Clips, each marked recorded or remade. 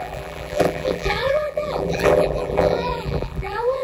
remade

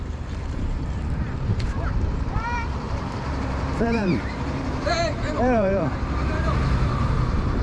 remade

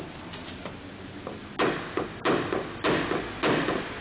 recorded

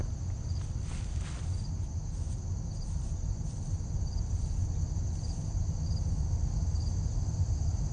recorded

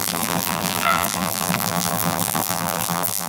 remade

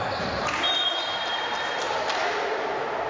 remade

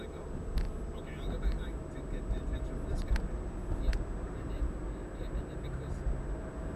recorded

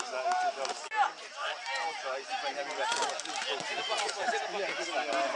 recorded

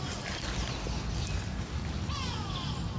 recorded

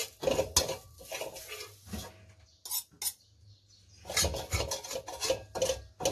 recorded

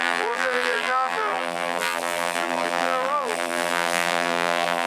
remade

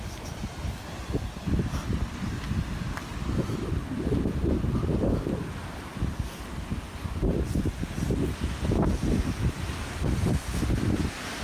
recorded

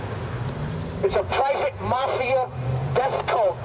remade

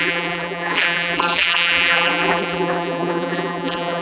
remade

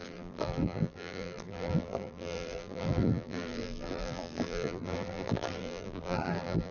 remade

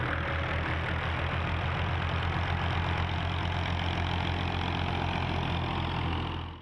recorded